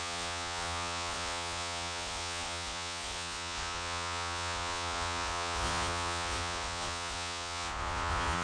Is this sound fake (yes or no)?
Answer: yes